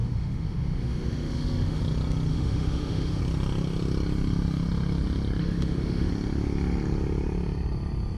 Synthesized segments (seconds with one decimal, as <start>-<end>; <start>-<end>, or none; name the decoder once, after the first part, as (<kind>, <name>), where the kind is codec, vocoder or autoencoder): 0.0-1.8 (autoencoder, DAC-VAE); 2.3-3.2; 5.4-6.1